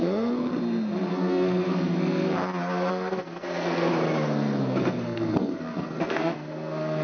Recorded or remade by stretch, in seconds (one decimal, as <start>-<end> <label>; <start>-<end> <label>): 0.0-0.5 remade; 0.5-1.1 recorded; 1.1-2.4 remade; 2.4-2.9 recorded; 2.9-3.9 remade; 3.9-4.8 recorded; 4.8-7.0 remade